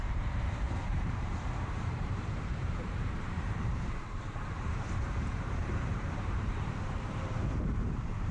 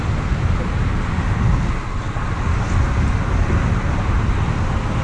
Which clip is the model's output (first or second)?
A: first